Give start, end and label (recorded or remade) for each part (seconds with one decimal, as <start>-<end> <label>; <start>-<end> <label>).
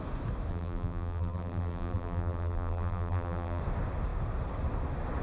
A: 0.0-0.5 recorded; 0.5-3.6 remade; 3.6-5.2 recorded